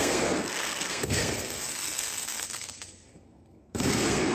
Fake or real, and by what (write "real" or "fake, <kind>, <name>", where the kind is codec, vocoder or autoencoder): fake, codec, SNAC